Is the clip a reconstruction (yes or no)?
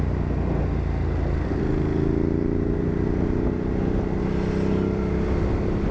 no